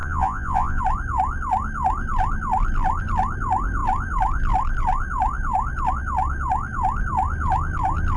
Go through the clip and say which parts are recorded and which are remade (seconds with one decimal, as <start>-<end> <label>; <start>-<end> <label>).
0.0-0.8 remade; 0.8-8.2 recorded